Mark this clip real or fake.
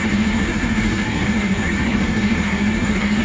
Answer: fake